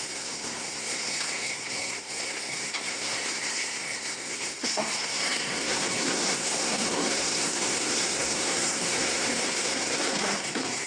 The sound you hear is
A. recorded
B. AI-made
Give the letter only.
B